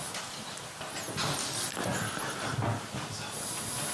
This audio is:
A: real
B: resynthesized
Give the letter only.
A